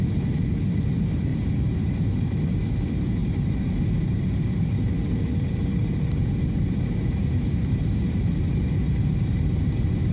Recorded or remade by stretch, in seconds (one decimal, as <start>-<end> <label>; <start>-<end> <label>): 0.0-1.3 recorded; 1.3-2.3 remade; 2.3-3.2 recorded; 3.2-8.4 remade; 8.4-10.1 recorded